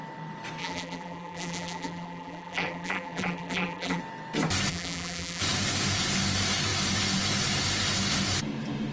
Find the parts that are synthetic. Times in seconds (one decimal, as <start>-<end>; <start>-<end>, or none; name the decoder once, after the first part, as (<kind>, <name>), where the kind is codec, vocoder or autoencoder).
0.6-4.0 (vocoder, BigVGAN v2); 4.7-5.4

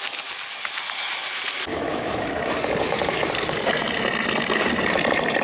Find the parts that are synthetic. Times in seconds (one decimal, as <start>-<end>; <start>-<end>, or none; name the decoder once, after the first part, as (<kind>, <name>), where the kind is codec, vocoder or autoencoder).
1.7-2.3 (autoencoder, DAC-VAE)

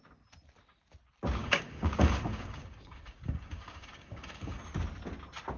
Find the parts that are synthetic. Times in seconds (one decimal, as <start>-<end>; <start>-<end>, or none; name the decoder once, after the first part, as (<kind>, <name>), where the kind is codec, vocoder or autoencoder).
1.4-4.6 (codec, DAC)

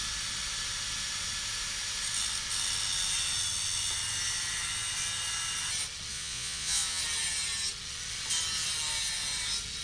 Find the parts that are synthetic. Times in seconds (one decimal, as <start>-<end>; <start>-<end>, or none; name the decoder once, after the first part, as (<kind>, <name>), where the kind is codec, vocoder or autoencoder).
6.1-7.0 (vocoder, Vocos)

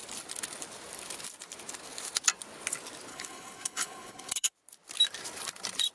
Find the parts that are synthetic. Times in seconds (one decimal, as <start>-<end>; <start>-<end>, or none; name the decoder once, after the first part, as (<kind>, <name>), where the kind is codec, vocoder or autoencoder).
3.1-4.5 (codec, HILCodec)